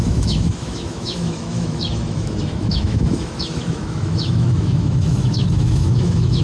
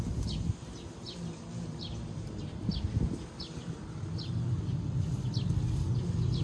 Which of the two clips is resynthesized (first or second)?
first